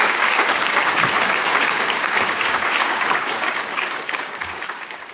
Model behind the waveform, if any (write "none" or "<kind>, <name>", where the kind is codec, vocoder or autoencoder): codec, DAC